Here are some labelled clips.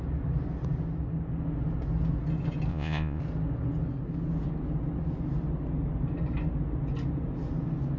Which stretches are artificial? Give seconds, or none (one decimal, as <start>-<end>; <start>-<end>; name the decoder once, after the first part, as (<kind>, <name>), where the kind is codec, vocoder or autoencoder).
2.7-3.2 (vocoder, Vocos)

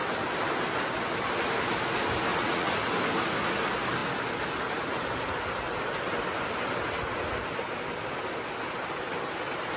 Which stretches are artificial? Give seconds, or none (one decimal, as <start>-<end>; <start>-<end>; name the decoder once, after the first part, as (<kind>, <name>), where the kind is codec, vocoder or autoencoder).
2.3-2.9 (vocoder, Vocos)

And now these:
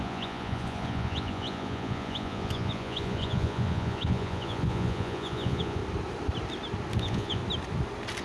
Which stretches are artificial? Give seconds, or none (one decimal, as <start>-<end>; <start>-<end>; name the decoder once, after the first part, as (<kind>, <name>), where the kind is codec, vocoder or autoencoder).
0.0-5.8 (vocoder, Vocos); 7.0-7.4

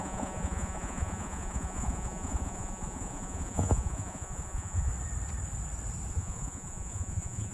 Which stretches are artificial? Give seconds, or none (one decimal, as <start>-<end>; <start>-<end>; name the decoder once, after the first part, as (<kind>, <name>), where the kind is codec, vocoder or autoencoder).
0.0-4.9 (vocoder, Vocos); 6.1-7.5

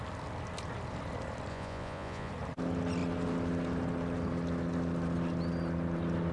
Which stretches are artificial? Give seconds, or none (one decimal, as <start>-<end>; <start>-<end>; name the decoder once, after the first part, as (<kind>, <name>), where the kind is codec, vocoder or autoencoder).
1.5-2.3 (vocoder, Vocos)

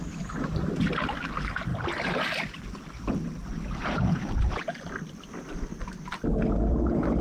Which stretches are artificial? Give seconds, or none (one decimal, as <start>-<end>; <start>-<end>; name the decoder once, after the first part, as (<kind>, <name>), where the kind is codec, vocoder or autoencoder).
3.8-4.3 (vocoder, Vocos)

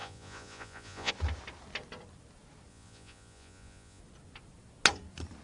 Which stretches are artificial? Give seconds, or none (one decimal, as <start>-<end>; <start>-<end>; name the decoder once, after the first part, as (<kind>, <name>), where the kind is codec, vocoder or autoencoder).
0.0-1.1 (vocoder, Vocos); 2.7-4.0

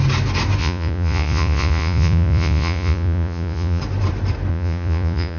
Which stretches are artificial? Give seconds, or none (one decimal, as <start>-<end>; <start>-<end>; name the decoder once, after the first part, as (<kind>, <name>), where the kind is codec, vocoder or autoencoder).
0.6-3.8 (vocoder, Vocos); 4.5-5.4